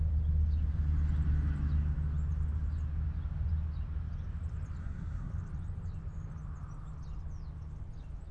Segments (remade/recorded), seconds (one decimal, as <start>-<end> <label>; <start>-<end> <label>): 0.0-4.8 recorded; 4.8-5.3 remade; 5.3-8.3 recorded